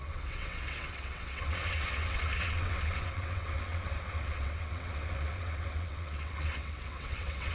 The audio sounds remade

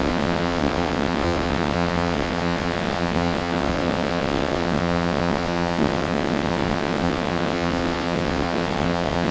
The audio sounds remade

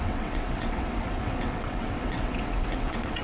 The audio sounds remade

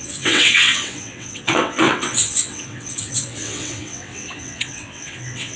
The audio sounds remade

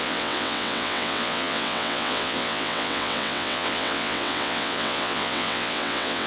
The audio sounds remade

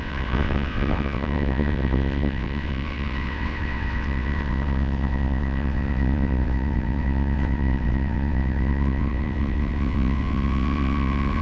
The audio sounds remade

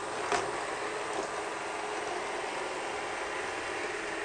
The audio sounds recorded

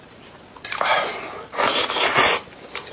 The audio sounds recorded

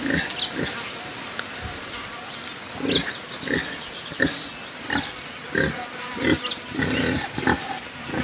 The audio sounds recorded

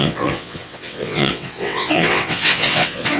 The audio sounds remade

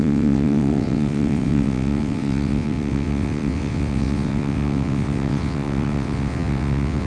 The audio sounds remade